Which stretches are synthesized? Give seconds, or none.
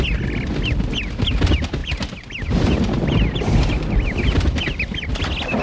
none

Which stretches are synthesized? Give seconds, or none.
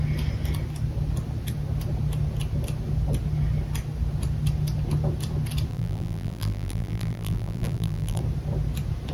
5.7-8.2 (vocoder, BigVGAN v2)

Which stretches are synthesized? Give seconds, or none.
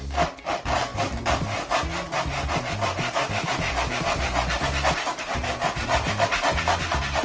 none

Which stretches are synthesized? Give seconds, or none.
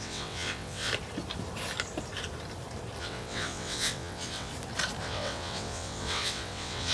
0.0-0.9 (vocoder, WaveNeXt); 3.0-4.5; 5.0-6.9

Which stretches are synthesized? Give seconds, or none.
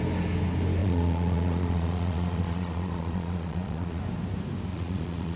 0.8-4.0 (vocoder, Vocos); 4.7-5.4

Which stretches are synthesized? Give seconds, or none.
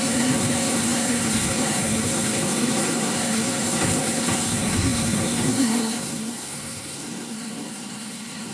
0.0-8.5 (codec, SNAC)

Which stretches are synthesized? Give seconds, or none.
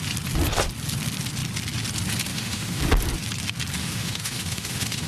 2.3-2.8 (autoencoder, DAC-VAE); 3.8-5.1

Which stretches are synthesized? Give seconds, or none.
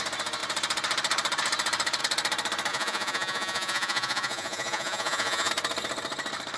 2.7-5.5 (vocoder, Vocos)